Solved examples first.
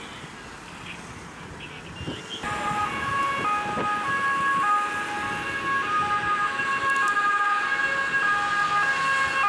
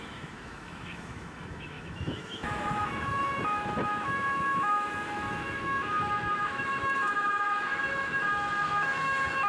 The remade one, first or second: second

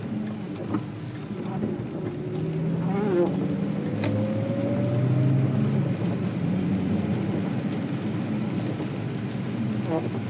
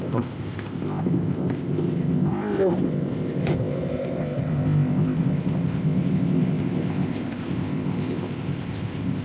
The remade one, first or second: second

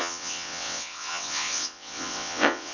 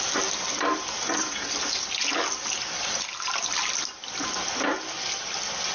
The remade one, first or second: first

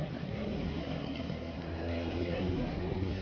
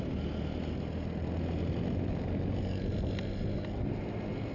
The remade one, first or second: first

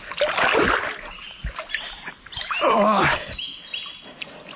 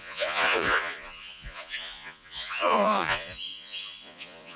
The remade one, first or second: second